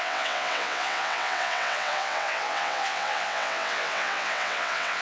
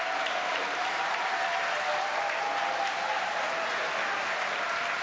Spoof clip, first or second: first